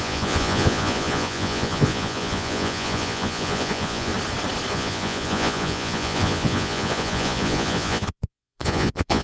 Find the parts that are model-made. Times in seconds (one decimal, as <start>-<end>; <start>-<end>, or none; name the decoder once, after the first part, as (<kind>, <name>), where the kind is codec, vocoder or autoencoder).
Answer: 0.0-4.1 (vocoder, Vocos); 4.7-9.2